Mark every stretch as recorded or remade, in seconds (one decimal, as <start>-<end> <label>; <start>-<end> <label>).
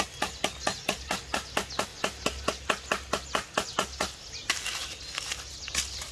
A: 0.0-6.1 recorded